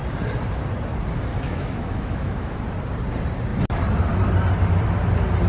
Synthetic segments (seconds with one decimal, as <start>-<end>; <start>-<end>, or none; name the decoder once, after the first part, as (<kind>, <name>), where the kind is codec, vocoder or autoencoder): 1.3-2.6 (autoencoder, DAC-VAE)